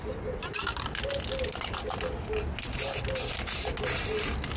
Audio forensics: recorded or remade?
recorded